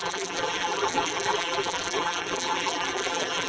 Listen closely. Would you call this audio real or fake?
fake